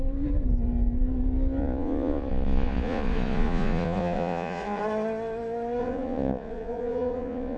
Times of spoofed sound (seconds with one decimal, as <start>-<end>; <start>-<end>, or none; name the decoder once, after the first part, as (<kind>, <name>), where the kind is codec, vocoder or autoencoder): 1.6-4.8 (vocoder, Vocos); 5.8-7.6